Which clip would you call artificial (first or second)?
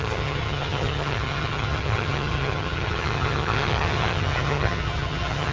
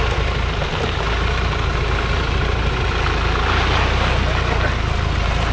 first